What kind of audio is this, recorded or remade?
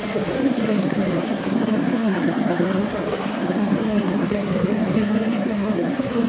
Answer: remade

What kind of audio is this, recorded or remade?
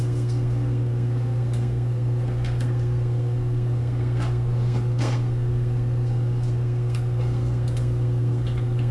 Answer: remade